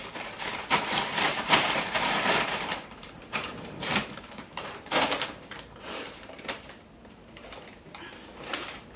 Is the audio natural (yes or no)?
no